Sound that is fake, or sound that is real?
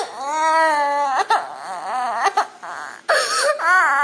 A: real